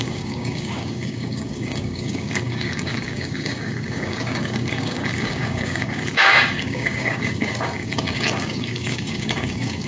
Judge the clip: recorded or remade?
remade